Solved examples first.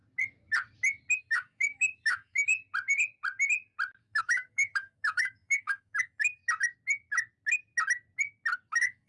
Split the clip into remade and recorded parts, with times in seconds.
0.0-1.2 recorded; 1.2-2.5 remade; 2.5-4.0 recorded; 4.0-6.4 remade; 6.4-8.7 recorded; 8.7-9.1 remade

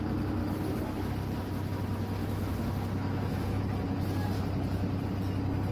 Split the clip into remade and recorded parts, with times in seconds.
0.0-2.2 recorded; 2.2-3.6 remade; 3.6-5.7 recorded

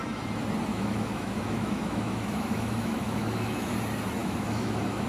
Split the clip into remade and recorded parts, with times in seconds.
0.0-0.7 recorded; 0.7-3.8 remade; 3.8-4.2 recorded; 4.2-5.1 remade

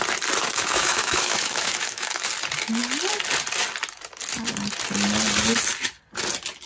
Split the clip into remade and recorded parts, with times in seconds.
0.0-0.4 recorded; 0.4-2.3 remade; 2.3-6.7 recorded

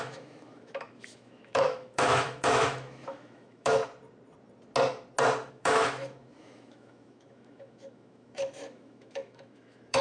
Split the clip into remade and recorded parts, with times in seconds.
0.0-3.8 remade; 3.8-5.5 recorded; 5.5-10.0 remade

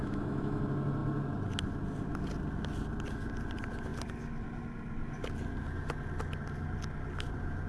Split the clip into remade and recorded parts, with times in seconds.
0.0-0.6 remade; 0.6-7.7 recorded

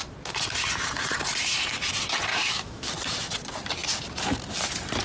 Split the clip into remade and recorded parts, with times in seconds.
0.0-2.3 recorded; 2.3-2.9 remade; 2.9-5.0 recorded

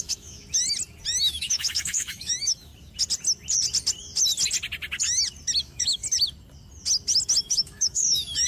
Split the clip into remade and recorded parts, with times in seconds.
0.0-0.4 remade; 0.4-1.2 recorded; 1.2-2.7 remade; 2.7-5.6 recorded; 5.6-6.0 remade; 6.0-7.4 recorded; 7.4-8.5 remade